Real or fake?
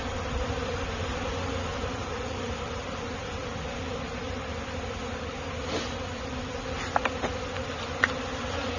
real